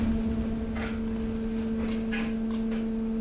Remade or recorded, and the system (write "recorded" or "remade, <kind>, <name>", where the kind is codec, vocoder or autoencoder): recorded